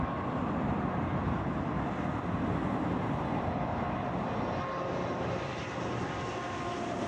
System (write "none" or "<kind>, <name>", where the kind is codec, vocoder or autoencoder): none